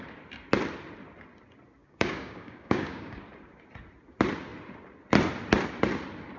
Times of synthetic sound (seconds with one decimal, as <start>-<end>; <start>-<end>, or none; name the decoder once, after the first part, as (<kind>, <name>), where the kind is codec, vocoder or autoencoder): 1.8-3.2 (codec, DAC)